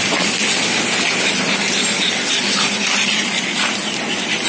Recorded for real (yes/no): yes